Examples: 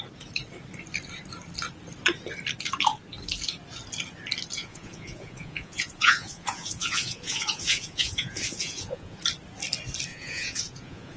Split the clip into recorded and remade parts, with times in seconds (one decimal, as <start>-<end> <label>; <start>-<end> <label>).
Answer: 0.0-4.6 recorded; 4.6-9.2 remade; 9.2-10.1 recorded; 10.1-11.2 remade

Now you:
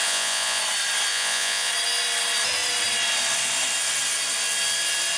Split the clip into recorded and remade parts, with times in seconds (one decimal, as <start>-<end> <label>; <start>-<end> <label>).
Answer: 0.0-0.6 remade; 0.6-1.1 recorded; 1.1-1.7 remade; 1.7-5.2 recorded

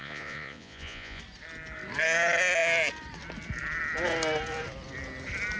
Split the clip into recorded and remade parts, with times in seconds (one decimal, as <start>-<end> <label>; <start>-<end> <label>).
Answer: 0.0-1.2 remade; 1.2-5.6 recorded

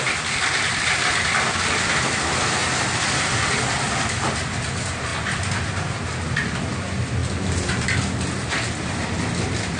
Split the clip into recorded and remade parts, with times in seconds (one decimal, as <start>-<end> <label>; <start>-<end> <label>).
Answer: 0.0-9.8 recorded

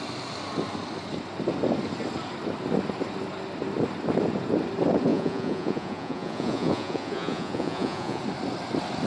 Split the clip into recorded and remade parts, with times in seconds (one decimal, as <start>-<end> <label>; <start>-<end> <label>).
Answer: 0.0-5.1 recorded; 5.1-8.2 remade; 8.2-9.1 recorded

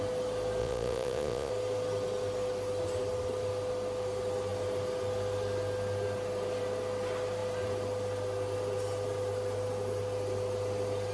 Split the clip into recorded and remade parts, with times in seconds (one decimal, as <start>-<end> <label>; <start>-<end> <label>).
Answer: 0.0-0.6 recorded; 0.6-1.5 remade; 1.5-11.1 recorded